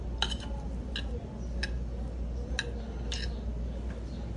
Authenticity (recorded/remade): recorded